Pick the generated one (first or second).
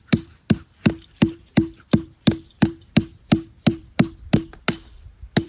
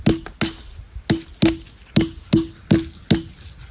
first